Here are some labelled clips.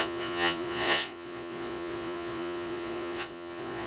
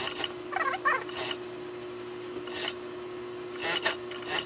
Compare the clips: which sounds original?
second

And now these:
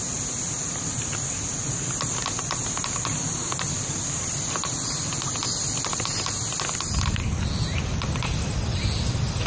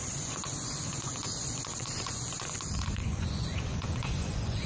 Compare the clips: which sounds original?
first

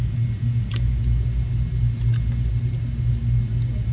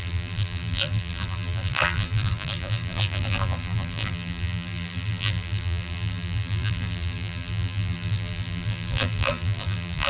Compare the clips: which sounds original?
first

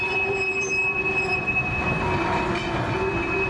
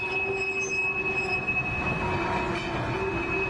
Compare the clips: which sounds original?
second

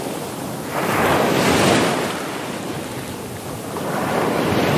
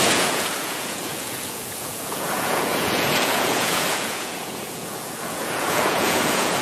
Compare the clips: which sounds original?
first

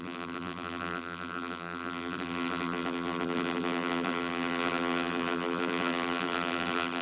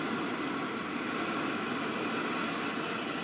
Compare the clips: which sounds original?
second